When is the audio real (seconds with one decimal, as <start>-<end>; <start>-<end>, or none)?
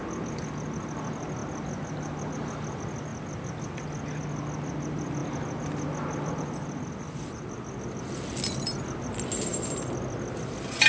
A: 0.0-10.9